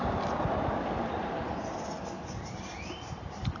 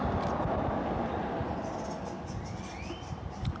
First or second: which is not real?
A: first